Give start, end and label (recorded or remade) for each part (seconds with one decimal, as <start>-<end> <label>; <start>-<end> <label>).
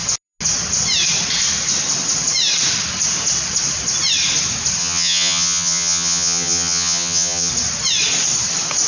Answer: 0.0-4.8 recorded; 4.8-7.5 remade; 7.5-8.9 recorded